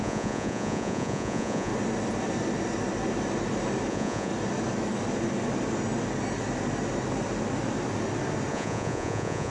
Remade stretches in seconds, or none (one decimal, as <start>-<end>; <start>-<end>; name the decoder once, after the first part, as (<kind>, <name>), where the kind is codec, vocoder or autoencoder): 0.0-1.7 (vocoder, Vocos); 3.9-4.3; 8.5-9.5